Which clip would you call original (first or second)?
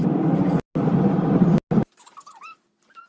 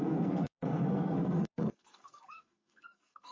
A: first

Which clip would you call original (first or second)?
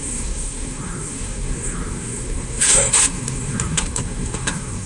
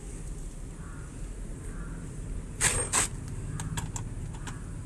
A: second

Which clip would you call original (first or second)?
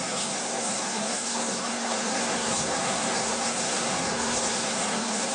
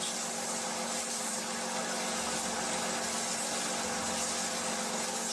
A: second